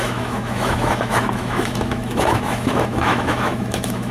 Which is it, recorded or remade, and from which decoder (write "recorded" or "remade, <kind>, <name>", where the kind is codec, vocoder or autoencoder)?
remade, autoencoder, DAC-VAE